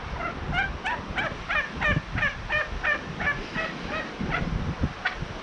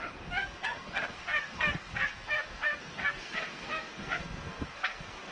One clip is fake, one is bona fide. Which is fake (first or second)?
second